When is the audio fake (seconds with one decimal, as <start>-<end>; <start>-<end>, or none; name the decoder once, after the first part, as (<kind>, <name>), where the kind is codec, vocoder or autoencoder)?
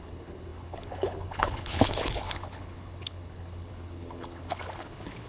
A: 0.0-5.3 (codec, HILCodec)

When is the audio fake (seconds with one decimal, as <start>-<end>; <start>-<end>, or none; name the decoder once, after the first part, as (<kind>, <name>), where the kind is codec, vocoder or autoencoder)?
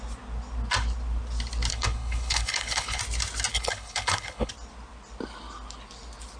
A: 1.7-3.0 (codec, HILCodec); 3.5-4.5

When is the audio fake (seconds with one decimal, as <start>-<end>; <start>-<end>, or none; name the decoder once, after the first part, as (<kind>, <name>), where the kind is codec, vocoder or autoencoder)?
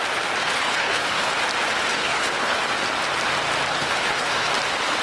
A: 0.4-1.3 (codec, HILCodec); 1.9-2.6; 3.7-4.5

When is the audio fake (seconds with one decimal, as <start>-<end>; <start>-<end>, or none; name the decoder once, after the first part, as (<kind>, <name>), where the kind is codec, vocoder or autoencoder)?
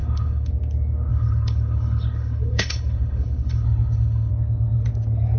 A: 0.0-0.5 (codec, HILCodec); 1.1-4.3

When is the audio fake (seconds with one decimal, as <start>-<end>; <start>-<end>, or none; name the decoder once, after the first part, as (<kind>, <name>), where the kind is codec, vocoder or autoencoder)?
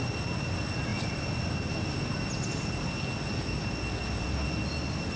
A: none